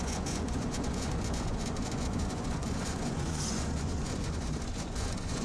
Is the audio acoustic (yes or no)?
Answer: no